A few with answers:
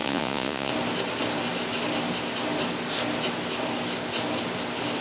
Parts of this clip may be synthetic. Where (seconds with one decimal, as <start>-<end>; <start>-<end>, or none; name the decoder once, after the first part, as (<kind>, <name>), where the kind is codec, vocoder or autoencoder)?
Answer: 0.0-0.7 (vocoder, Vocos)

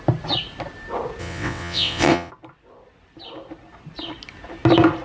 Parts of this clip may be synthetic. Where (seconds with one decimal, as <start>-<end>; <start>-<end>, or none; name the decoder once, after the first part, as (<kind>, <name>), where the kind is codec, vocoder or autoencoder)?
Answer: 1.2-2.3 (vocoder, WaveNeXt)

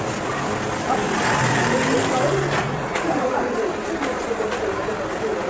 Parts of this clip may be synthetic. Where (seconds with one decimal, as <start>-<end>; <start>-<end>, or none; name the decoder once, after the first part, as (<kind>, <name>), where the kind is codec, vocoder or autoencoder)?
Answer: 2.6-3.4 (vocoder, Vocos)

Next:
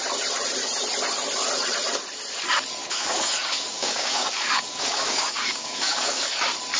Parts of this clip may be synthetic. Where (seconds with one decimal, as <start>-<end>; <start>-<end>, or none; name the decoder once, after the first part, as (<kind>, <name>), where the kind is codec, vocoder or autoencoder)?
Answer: 2.8-6.3 (codec, DAC)

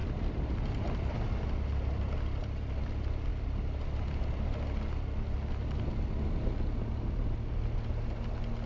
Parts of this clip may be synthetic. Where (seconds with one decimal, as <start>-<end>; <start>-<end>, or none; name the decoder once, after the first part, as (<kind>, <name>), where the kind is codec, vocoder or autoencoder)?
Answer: 0.0-1.1 (vocoder, BigVGAN v2)